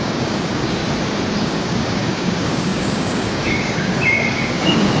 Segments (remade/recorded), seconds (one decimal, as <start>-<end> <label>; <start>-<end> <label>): 0.0-0.8 remade; 0.8-1.4 recorded; 1.4-5.0 remade